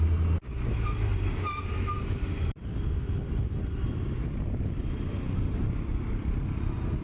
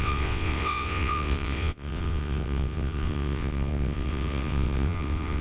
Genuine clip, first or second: first